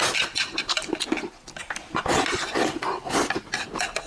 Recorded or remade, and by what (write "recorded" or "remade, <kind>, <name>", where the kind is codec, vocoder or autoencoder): recorded